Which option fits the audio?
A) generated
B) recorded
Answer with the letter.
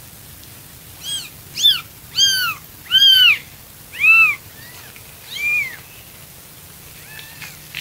B